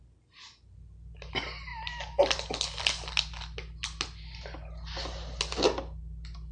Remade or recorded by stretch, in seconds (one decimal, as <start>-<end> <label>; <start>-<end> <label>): 0.0-6.5 recorded